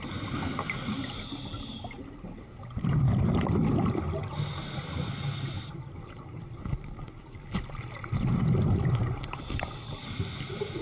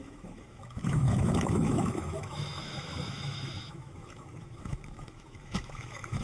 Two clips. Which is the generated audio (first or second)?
second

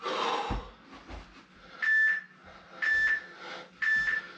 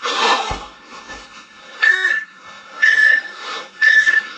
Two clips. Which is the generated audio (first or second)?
second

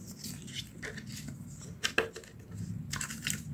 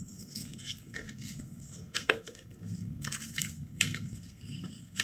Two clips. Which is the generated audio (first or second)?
second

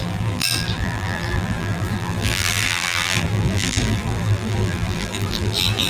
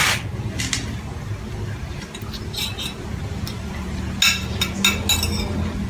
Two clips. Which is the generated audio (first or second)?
first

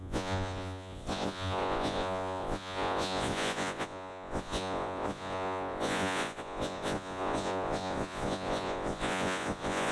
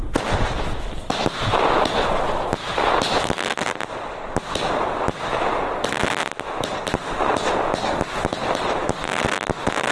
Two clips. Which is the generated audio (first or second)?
first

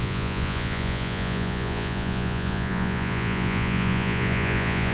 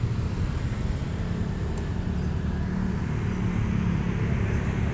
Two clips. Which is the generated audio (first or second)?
first